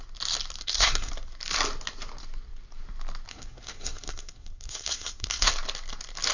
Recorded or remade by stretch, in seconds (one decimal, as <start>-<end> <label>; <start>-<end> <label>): 0.0-0.6 recorded; 0.6-1.1 remade; 1.1-3.3 recorded; 3.3-5.5 remade; 5.5-6.3 recorded